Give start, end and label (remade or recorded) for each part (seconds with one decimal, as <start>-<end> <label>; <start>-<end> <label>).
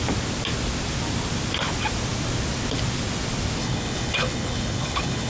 0.0-3.6 recorded; 3.6-5.3 remade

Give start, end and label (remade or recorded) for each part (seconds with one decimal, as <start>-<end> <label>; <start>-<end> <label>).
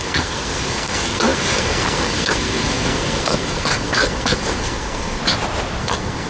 0.0-5.2 remade; 5.2-5.8 recorded; 5.8-6.3 remade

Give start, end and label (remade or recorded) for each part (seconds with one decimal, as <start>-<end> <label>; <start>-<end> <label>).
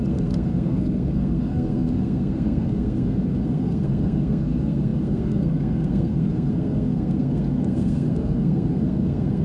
0.0-9.4 remade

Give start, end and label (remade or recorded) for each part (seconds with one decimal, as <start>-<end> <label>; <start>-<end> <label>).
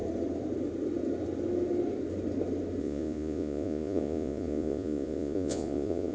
0.0-2.8 recorded; 2.8-6.1 remade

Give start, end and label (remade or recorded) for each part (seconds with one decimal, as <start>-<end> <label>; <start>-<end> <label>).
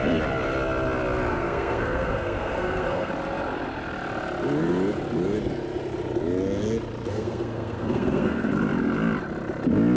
0.0-1.3 recorded; 1.3-3.1 remade; 3.1-7.1 recorded; 7.1-8.5 remade; 8.5-10.0 recorded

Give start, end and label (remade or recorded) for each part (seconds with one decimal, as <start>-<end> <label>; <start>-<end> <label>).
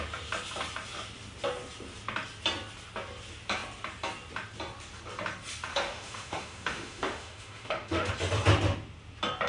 0.0-5.7 recorded; 5.7-8.1 remade; 8.1-9.5 recorded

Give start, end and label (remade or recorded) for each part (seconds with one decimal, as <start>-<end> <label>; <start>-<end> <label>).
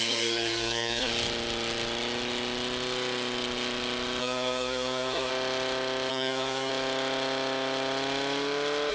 0.0-1.1 remade; 1.1-4.2 recorded; 4.2-5.3 remade; 5.3-6.1 recorded; 6.1-6.7 remade; 6.7-8.9 recorded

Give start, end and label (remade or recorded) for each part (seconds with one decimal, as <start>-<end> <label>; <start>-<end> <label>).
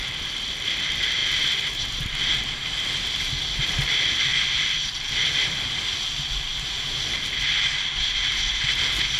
0.0-1.2 remade; 1.2-2.4 recorded; 2.4-4.3 remade; 4.3-5.2 recorded; 5.2-6.5 remade; 6.5-9.2 recorded